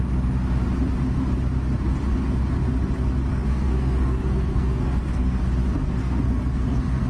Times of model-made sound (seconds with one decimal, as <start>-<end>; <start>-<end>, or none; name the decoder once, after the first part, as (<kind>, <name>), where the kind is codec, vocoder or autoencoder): 3.3-5.4 (codec, SNAC); 6.0-7.1